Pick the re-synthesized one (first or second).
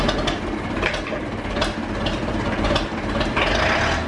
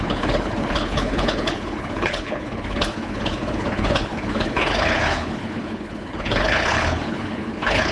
second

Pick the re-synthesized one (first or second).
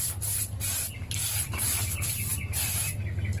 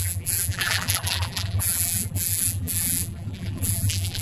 second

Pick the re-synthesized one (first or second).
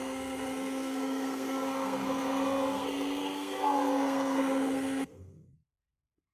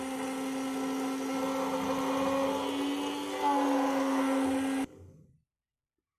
first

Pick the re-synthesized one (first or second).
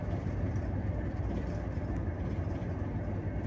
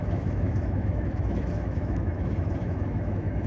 second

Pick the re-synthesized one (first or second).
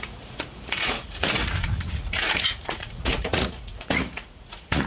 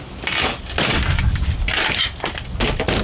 first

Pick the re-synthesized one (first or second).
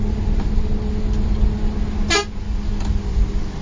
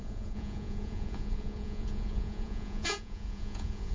second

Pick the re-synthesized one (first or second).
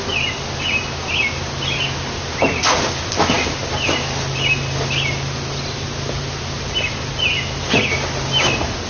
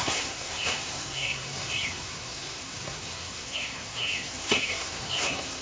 second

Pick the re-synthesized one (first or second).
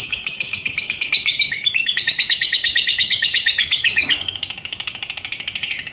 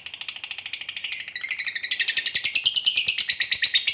first